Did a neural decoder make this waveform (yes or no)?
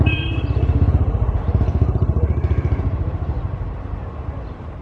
yes